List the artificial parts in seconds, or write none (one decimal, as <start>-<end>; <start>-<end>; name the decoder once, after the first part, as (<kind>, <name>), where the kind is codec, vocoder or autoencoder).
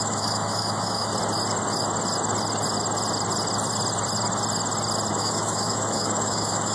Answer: 0.0-1.1 (autoencoder, DAC-VAE); 5.1-6.7